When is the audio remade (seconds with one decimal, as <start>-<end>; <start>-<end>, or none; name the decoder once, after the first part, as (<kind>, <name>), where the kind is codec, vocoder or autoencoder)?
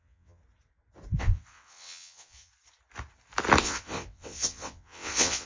0.0-0.4 (vocoder, WaveNeXt); 1.2-2.5; 3.6-5.5